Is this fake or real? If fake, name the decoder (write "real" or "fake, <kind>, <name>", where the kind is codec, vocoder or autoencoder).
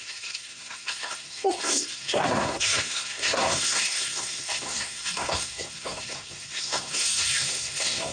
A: fake, codec, SNAC